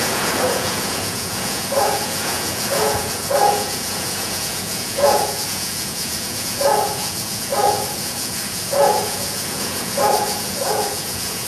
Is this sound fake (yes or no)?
yes